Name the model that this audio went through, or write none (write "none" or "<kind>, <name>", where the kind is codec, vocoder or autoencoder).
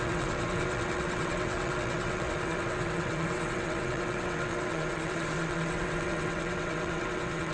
vocoder, WaveNeXt